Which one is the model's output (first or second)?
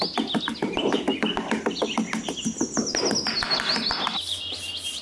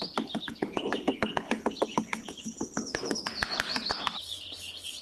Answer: second